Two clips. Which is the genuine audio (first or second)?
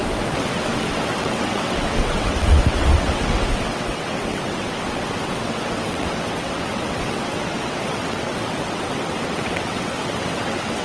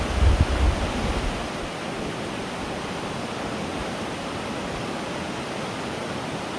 second